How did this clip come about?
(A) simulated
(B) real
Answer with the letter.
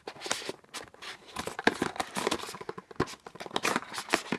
B